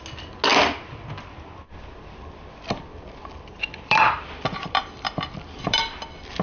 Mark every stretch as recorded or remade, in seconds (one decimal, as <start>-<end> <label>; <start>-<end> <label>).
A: 0.0-0.5 recorded; 0.5-1.1 remade; 1.1-2.9 recorded; 2.9-5.8 remade; 5.8-6.4 recorded